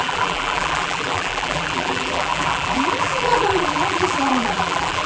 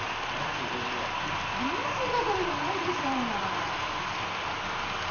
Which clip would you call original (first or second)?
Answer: second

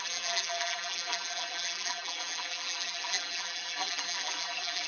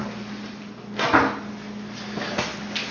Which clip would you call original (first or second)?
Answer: second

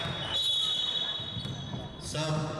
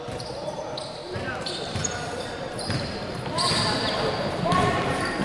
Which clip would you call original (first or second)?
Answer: first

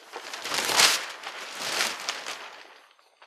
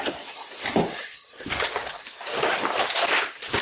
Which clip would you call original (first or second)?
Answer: first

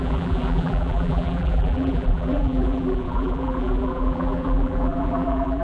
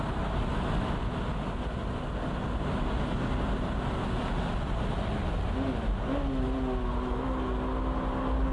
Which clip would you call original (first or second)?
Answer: second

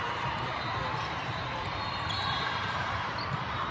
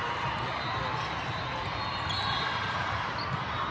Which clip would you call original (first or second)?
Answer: second